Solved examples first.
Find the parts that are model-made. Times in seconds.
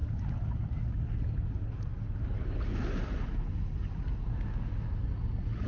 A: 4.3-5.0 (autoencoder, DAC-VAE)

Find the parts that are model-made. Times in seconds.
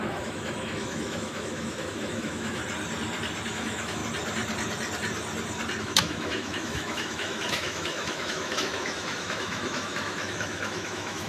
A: 0.0-2.6 (autoencoder, DAC-VAE); 3.5-4.0; 5.8-11.3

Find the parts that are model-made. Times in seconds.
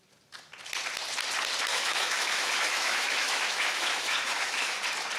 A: 1.7-4.8 (autoencoder, DAC-VAE)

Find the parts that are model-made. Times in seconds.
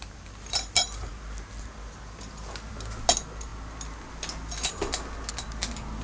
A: none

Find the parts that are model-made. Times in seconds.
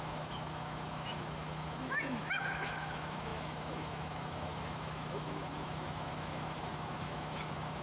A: 0.0-7.8 (autoencoder, DAC-VAE)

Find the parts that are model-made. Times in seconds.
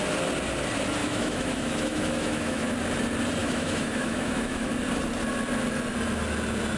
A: 1.0-2.7 (autoencoder, DAC-VAE); 3.4-4.7